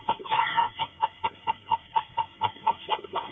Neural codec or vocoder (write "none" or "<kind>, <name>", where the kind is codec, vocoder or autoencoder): codec, SNAC